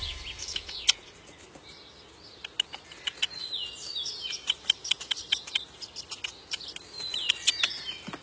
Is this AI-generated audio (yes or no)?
no